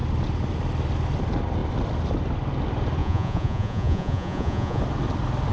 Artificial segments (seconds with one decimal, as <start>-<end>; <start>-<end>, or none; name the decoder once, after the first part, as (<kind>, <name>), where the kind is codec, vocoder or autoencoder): 3.0-4.8 (vocoder, Vocos)